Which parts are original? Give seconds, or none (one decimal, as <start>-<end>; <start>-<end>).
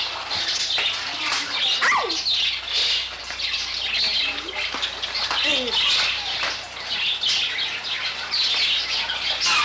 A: 0.0-9.6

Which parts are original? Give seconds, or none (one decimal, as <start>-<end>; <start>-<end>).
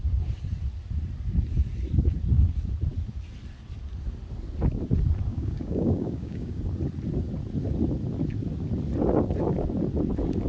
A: 0.0-5.3; 6.6-10.5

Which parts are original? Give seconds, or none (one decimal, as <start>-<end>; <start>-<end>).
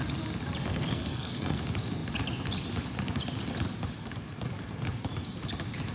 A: 0.0-0.7; 1.6-5.9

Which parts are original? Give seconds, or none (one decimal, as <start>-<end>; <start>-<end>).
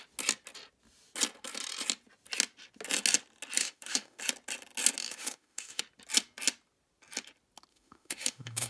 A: 0.0-3.6; 4.2-5.0; 5.8-7.7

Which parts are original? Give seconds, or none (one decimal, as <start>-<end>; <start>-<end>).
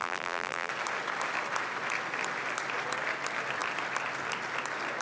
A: 0.7-5.0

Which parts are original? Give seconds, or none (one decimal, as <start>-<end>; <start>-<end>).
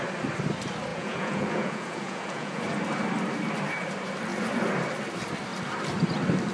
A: 0.0-0.9; 2.6-6.5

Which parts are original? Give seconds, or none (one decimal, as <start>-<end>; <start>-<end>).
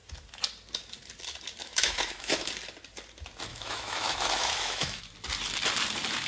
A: 0.0-1.6; 2.5-3.5; 5.0-6.3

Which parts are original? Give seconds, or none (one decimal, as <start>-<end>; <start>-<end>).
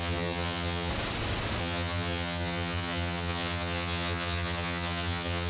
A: 0.9-1.6